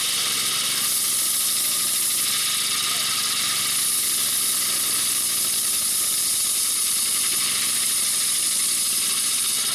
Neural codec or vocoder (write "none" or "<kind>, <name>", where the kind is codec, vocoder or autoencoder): none